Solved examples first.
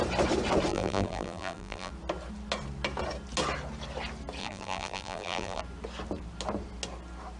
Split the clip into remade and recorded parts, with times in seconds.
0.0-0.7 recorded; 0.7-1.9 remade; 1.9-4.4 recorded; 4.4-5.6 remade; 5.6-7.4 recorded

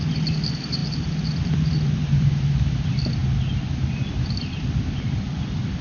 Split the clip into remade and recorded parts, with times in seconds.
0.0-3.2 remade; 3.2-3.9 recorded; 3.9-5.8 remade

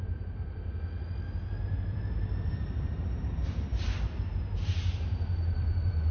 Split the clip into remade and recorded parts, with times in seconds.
0.0-0.4 remade; 0.4-2.5 recorded; 2.5-6.1 remade

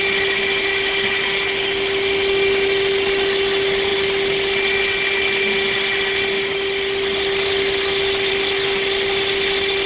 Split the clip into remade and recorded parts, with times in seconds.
0.0-9.9 recorded